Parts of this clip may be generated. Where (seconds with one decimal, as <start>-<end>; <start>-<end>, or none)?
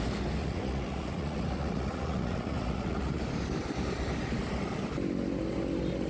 0.4-3.2